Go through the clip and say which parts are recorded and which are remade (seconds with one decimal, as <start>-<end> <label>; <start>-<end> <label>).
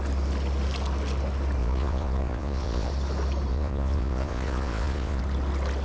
0.0-1.6 recorded; 1.6-2.9 remade; 2.9-3.5 recorded; 3.5-5.2 remade; 5.2-5.8 recorded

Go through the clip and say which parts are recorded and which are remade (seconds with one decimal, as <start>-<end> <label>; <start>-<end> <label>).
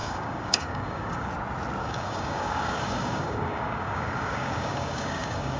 0.0-1.3 remade; 1.3-1.8 recorded; 1.8-5.6 remade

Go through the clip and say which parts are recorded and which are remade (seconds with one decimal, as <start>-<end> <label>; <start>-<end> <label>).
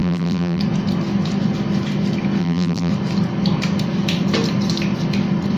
0.0-0.6 remade; 0.6-2.4 recorded; 2.4-2.9 remade; 2.9-5.6 recorded